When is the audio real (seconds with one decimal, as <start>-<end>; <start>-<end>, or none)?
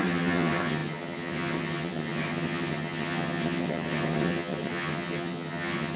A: none